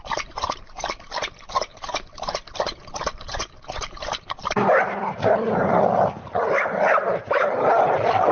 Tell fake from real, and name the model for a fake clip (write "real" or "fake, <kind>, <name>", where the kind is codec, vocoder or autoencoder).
fake, vocoder, BigVGAN v2